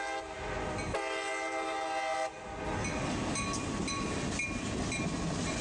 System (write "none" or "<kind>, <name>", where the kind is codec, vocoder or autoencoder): none